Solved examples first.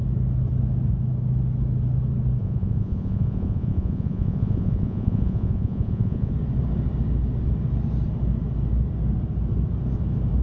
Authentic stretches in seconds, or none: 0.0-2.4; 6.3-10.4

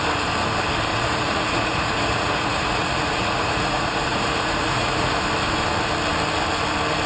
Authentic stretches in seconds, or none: 0.0-0.9; 5.2-7.1

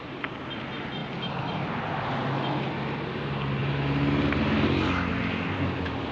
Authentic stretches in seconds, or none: 0.0-6.1

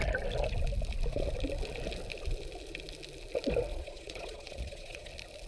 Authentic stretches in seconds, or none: 0.0-3.7; 5.1-5.5

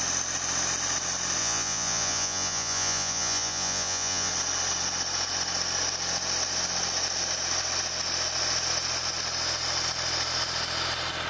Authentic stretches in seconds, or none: 0.0-1.4; 4.3-11.3

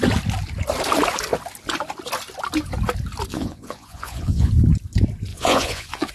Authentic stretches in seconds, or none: 0.0-3.3; 4.5-5.3